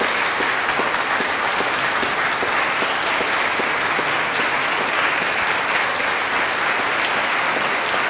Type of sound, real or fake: real